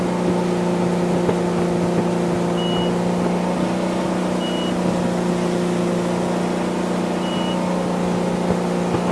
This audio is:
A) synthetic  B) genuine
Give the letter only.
B